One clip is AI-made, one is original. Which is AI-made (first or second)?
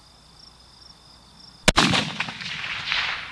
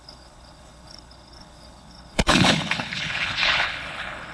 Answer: second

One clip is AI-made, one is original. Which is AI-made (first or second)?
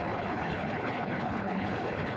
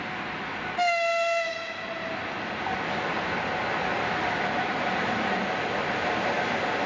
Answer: first